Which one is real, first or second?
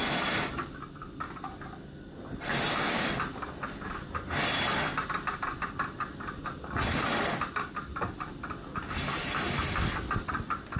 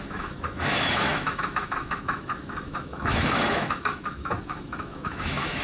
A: first